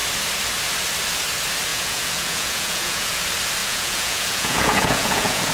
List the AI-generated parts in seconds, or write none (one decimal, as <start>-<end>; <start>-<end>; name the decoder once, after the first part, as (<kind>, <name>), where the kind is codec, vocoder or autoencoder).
1.7-3.2 (vocoder, Vocos); 3.6-5.5